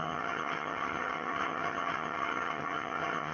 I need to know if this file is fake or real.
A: fake